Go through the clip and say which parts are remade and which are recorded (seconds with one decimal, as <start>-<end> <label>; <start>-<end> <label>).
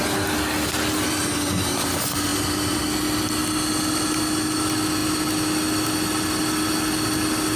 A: 0.0-7.6 recorded